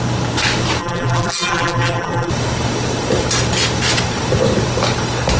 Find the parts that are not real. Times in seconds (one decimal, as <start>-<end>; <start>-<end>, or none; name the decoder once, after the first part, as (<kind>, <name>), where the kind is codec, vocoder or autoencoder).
0.8-2.3 (vocoder, BigVGAN v2)